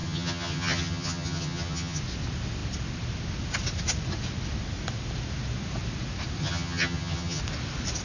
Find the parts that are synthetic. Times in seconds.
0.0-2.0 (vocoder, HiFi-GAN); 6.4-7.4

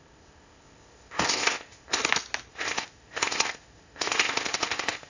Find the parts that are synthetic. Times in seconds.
0.0-2.0 (codec, ZipCodec); 2.5-5.1

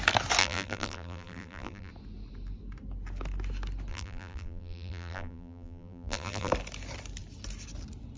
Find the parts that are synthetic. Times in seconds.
0.4-1.9 (vocoder, BigVGAN v2); 3.9-6.5